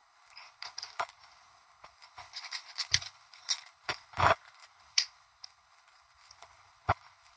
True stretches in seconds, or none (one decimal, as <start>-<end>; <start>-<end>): none